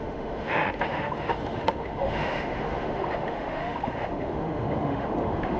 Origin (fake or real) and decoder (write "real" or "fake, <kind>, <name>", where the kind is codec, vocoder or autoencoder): fake, autoencoder, DAC-VAE